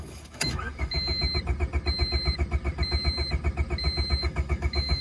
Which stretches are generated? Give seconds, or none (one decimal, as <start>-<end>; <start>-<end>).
0.0-1.2; 4.2-5.0